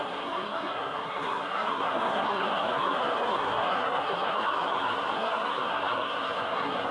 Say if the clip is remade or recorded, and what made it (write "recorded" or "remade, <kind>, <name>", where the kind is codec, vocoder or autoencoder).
remade, codec, SNAC